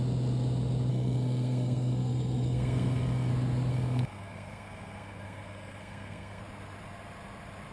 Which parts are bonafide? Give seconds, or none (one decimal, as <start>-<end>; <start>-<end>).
0.0-0.9; 3.3-3.7; 6.4-7.7